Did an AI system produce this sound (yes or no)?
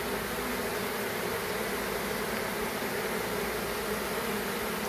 no